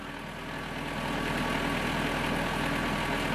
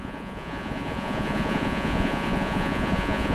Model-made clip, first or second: second